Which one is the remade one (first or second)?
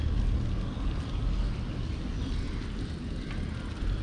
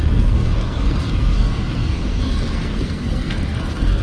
second